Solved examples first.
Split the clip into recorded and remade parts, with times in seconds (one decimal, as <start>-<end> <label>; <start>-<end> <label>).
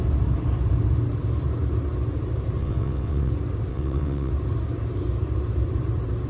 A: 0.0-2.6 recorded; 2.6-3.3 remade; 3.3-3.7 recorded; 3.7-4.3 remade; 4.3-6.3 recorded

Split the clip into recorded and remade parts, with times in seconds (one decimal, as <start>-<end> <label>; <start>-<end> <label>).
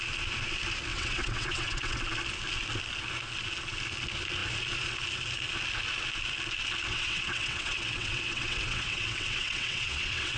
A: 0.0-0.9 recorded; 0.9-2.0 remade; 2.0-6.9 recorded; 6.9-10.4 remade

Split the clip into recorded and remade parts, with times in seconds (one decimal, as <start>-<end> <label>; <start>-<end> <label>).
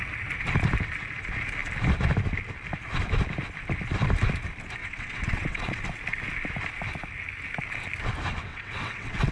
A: 0.0-4.8 recorded; 4.8-5.8 remade; 5.8-8.5 recorded; 8.5-9.3 remade